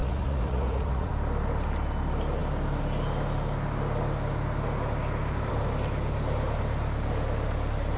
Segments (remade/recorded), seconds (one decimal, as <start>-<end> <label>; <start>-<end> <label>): 0.0-1.1 remade; 1.1-8.0 recorded